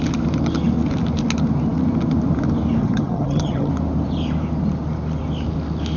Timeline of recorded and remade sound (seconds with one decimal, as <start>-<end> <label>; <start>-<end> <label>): 0.0-2.8 recorded; 2.8-3.7 remade; 3.7-6.0 recorded